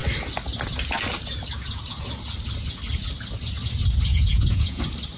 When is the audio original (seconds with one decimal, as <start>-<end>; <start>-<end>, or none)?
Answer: 0.0-4.1; 4.8-5.2